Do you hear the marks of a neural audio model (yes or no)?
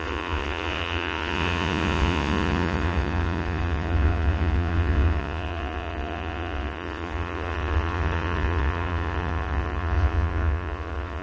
yes